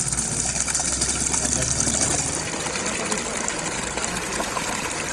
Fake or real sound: real